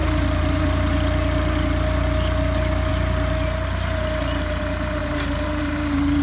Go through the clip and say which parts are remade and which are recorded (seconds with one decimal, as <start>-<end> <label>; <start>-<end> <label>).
0.0-0.8 remade; 0.8-5.0 recorded; 5.0-6.2 remade